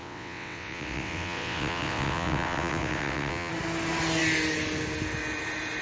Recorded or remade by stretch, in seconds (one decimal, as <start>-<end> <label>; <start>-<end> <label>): 0.0-3.5 remade; 3.5-5.8 recorded